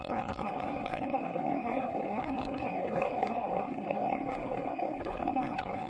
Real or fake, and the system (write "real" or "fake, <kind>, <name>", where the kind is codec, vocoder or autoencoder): fake, codec, SNAC